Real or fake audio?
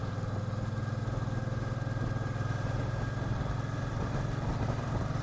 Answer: real